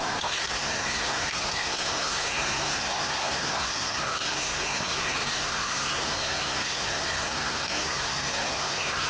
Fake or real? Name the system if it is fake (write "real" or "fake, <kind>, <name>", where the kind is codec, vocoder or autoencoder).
fake, codec, SNAC